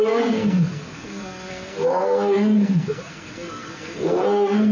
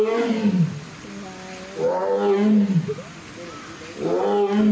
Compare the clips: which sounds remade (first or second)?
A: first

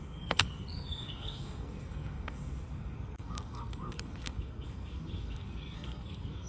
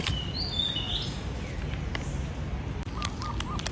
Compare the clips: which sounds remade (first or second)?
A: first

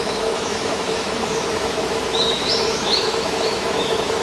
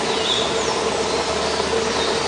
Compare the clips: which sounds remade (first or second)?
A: first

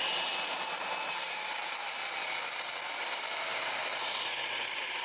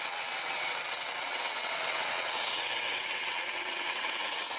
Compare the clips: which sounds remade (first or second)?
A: second